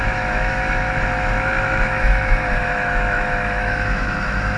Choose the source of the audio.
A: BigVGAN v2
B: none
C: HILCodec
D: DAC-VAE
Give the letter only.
D